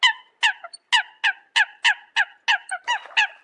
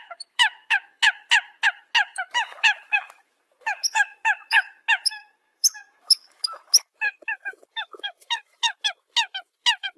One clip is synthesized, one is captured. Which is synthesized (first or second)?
second